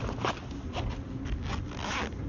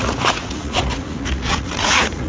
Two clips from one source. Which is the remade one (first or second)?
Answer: second